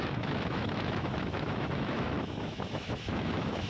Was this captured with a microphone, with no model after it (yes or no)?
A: no